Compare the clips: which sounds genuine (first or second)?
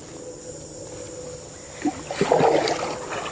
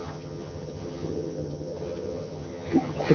first